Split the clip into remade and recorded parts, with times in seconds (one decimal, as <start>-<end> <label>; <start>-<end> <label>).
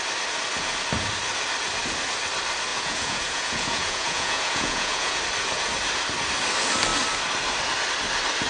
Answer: 0.0-2.7 recorded; 2.7-5.2 remade; 5.2-8.5 recorded